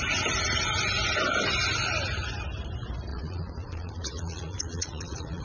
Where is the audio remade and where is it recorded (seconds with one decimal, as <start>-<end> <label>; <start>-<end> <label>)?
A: 0.0-3.1 recorded; 3.1-5.4 remade